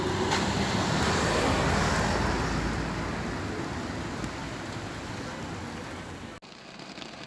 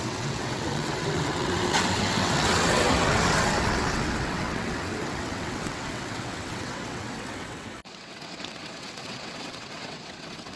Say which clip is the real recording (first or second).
first